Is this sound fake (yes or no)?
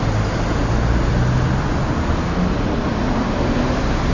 no